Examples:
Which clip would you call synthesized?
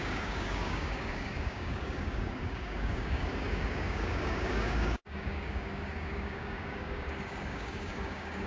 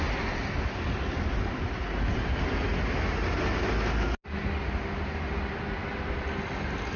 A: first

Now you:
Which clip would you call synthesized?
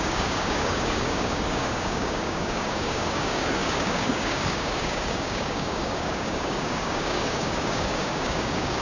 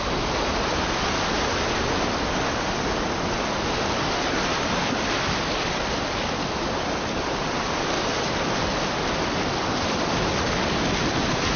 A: first